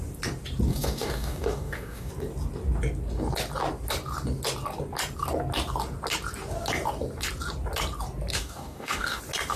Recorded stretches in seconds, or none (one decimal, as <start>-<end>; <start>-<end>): 0.0-0.7; 2.1-8.3; 9.2-9.6

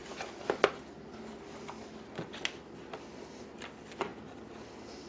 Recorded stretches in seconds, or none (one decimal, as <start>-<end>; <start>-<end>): 0.0-5.1

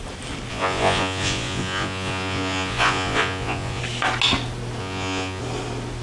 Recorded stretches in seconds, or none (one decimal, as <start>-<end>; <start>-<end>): 0.0-0.5; 3.8-4.8; 5.4-6.0

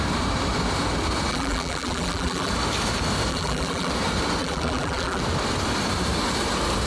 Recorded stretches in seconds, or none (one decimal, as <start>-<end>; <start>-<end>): 0.0-1.3; 2.5-3.3; 3.9-4.4; 5.2-6.9